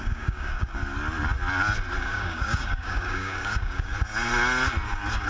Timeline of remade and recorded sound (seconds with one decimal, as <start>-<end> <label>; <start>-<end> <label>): 0.0-0.8 remade; 0.8-2.0 recorded; 2.0-3.9 remade; 3.9-5.3 recorded